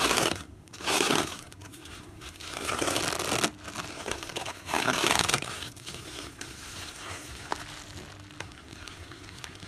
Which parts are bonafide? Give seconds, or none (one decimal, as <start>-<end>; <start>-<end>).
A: 3.0-3.9; 7.5-8.4